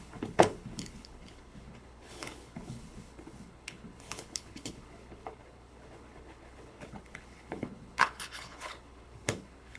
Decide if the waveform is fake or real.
fake